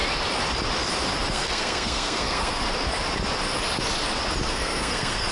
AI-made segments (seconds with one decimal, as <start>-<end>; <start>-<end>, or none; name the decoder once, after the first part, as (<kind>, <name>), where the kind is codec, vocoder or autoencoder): 1.3-2.6 (codec, SNAC); 4.5-5.3